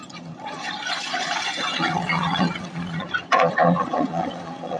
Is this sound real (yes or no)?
no